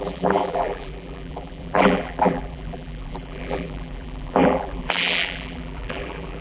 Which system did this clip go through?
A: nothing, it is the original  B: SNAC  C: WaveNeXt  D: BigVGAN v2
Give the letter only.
D